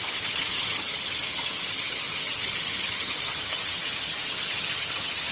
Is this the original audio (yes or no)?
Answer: no